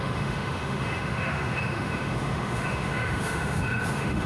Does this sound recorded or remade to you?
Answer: remade